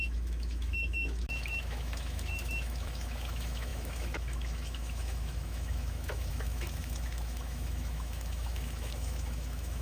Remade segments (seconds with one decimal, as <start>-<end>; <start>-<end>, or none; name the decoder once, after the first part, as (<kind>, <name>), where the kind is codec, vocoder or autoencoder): 0.0-9.8 (autoencoder, DAC-VAE)